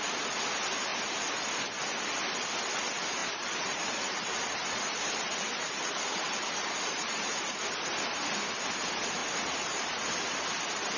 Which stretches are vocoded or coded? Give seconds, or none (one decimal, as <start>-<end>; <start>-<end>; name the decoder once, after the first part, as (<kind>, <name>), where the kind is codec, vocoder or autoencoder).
3.2-8.0 (vocoder, BigVGAN v2); 9.2-9.9